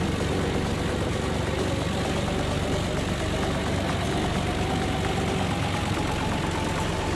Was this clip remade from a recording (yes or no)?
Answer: no